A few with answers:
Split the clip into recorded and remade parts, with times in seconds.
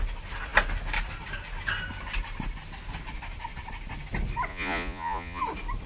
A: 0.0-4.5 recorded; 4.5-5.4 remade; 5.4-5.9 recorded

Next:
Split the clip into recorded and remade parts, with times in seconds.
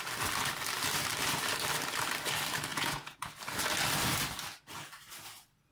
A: 0.0-2.7 recorded; 2.7-3.3 remade; 3.3-5.7 recorded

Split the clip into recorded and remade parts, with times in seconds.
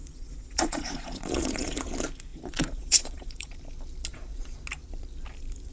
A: 0.0-1.9 remade; 1.9-2.3 recorded; 2.3-3.5 remade; 3.5-4.1 recorded; 4.1-4.6 remade; 4.6-5.7 recorded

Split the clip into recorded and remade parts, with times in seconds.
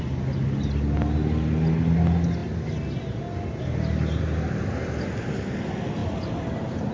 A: 0.0-6.9 recorded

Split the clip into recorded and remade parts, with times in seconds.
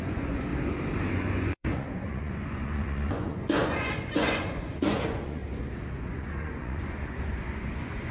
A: 0.0-0.5 remade; 0.5-1.1 recorded; 1.1-5.4 remade; 5.4-6.1 recorded; 6.1-8.1 remade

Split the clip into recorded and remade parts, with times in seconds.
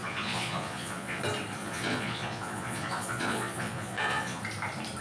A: 0.0-1.2 remade; 1.2-1.6 recorded; 1.6-4.4 remade; 4.4-5.0 recorded